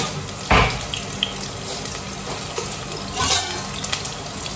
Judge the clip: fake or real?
real